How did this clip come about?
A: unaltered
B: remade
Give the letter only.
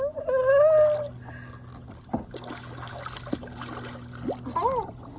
A